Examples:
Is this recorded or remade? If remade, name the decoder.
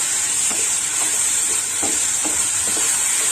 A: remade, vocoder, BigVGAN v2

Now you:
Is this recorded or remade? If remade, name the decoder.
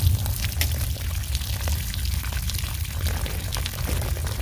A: recorded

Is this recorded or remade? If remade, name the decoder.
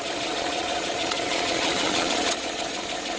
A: remade, vocoder, Vocos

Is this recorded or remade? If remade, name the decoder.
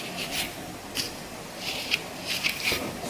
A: remade, vocoder, BigVGAN v2